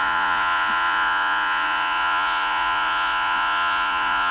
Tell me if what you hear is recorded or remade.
remade